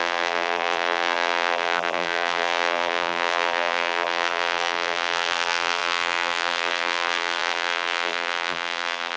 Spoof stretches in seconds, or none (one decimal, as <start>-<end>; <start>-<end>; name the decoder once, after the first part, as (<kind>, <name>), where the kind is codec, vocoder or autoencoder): 0.0-9.2 (vocoder, BigVGAN v2)